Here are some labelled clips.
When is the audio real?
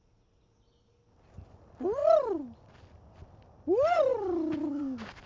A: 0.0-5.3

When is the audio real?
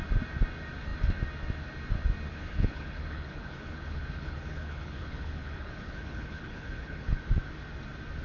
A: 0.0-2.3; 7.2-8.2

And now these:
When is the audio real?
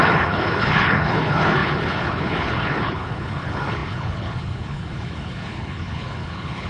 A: none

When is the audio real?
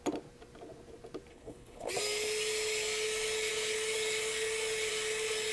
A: 0.0-1.3; 1.9-5.5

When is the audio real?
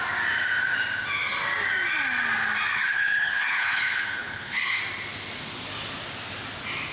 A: 0.0-2.7; 4.8-6.9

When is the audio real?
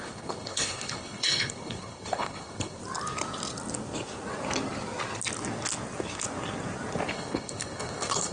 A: 2.8-7.1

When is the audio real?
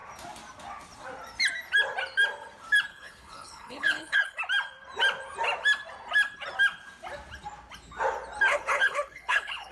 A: 0.0-2.9; 4.4-8.5